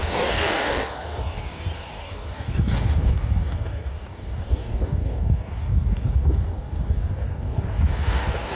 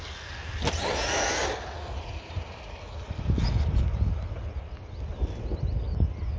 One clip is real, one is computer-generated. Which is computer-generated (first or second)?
first